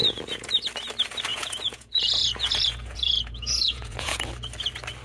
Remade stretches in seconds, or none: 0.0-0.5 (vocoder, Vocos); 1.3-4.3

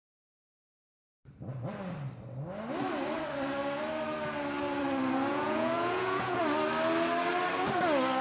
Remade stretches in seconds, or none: 5.3-6.4 (vocoder, Vocos)

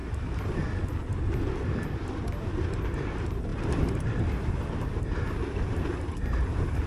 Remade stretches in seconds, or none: 3.5-5.0 (vocoder, BigVGAN v2)

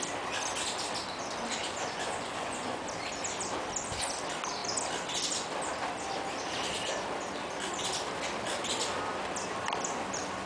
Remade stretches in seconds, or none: 1.6-2.8 (vocoder, Vocos)

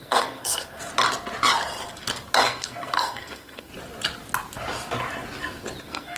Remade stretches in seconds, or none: 0.0-0.9 (codec, SNAC); 2.4-3.7; 5.8-6.2

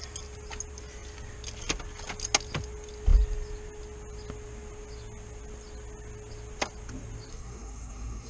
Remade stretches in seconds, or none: 7.3-8.3 (codec, SNAC)